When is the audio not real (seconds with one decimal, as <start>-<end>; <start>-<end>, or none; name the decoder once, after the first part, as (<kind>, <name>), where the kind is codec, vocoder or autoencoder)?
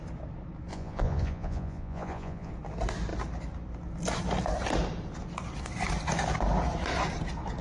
0.7-2.5 (vocoder, Vocos)